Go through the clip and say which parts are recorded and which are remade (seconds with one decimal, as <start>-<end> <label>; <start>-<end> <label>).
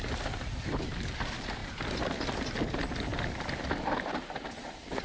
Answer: 0.0-5.0 recorded